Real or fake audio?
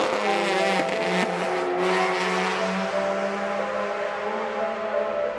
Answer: real